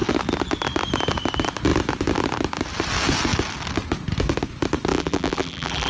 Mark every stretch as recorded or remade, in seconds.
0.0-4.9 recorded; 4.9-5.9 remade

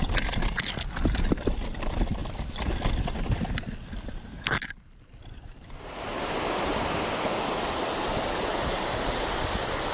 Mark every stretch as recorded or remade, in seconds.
0.0-9.9 recorded

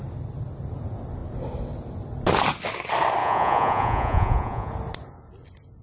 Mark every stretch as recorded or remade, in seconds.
0.0-3.2 recorded; 3.2-4.7 remade; 4.7-5.8 recorded

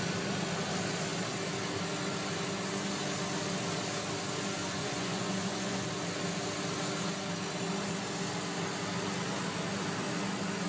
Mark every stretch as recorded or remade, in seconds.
0.0-4.6 recorded; 4.6-5.9 remade; 5.9-10.7 recorded

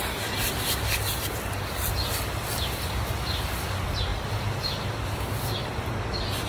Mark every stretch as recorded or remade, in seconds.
0.0-6.5 recorded

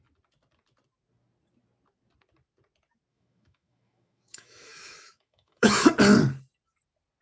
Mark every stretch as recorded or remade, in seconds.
0.0-3.1 recorded; 3.1-5.9 remade; 5.9-7.2 recorded

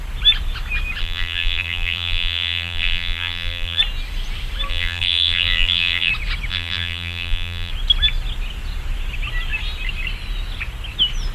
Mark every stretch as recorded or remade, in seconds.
0.0-1.0 recorded; 1.0-3.8 remade; 3.8-4.7 recorded; 4.7-6.1 remade; 6.1-6.5 recorded; 6.5-7.7 remade; 7.7-11.3 recorded